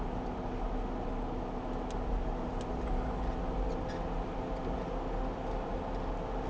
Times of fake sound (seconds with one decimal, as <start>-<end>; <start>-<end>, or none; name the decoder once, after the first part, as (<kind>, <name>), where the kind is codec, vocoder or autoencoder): none